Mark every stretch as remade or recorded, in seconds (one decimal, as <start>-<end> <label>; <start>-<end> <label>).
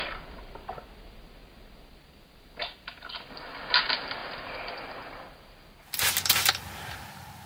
0.0-4.2 recorded; 4.2-7.1 remade; 7.1-7.5 recorded